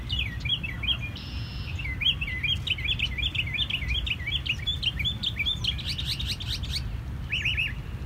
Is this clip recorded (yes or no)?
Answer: yes